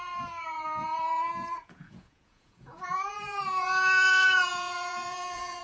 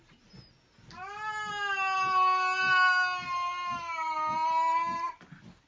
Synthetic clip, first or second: first